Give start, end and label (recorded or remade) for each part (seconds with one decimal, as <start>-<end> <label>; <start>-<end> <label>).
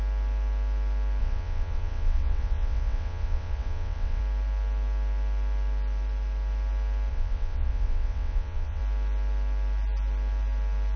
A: 0.0-1.2 recorded; 1.2-4.2 remade; 4.2-7.1 recorded; 7.1-8.8 remade; 8.8-11.0 recorded